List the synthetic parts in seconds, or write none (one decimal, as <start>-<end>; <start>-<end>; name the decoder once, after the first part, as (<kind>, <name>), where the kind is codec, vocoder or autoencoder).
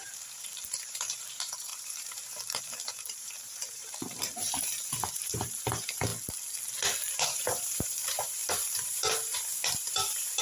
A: 0.0-6.1 (vocoder, BigVGAN v2); 7.1-10.4